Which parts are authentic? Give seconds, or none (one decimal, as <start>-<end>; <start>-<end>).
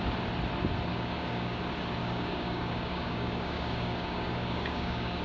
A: 0.0-0.9; 1.6-2.0